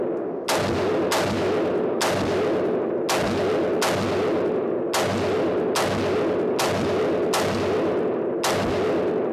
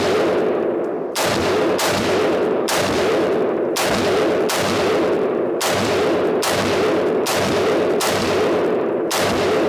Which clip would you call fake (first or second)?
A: second